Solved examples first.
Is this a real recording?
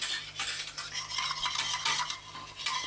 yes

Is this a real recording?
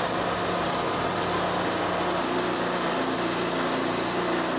yes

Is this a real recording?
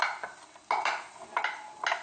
yes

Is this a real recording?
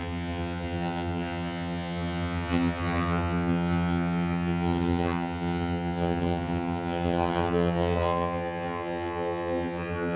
no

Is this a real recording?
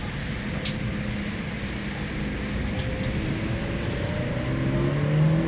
yes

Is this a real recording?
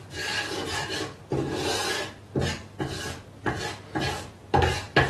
yes